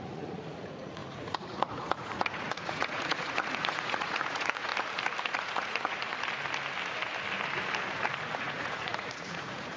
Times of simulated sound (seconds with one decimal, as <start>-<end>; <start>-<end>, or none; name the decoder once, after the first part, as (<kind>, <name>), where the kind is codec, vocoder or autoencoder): 0.0-4.7 (vocoder, Vocos); 5.4-6.1; 8.4-9.8